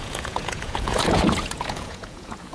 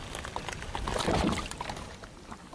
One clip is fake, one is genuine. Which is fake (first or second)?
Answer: first